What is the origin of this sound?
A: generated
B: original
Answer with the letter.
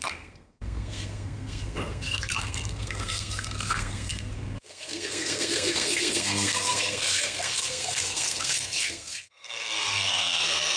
A